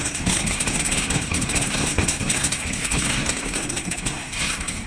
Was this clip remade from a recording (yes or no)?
yes